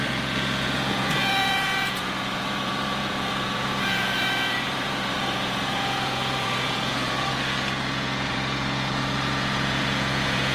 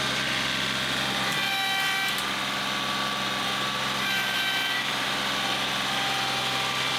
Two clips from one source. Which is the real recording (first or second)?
second